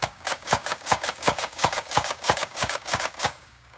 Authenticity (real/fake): fake